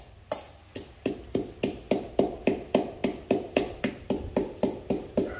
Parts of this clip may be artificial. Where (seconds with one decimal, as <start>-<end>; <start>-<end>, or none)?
none